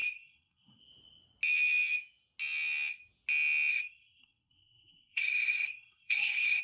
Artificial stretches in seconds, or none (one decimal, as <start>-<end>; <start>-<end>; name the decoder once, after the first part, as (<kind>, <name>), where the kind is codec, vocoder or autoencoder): 0.0-0.8 (codec, SNAC); 3.7-6.6